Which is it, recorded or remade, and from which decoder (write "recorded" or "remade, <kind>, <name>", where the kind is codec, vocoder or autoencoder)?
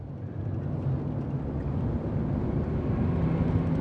recorded